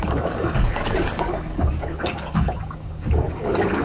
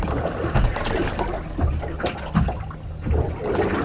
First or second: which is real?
second